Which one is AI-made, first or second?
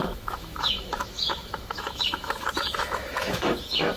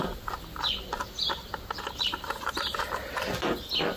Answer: first